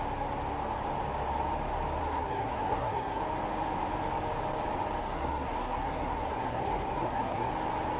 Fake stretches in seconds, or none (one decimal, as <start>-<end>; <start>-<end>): 2.0-3.2; 5.0-7.5